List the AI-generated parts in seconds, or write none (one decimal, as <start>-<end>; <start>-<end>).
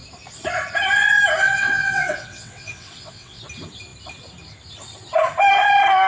1.4-3.4